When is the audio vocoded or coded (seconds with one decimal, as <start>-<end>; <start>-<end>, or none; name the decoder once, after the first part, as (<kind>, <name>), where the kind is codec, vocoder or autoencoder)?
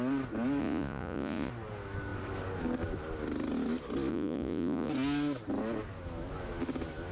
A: 0.6-1.5 (vocoder, Vocos); 4.1-4.9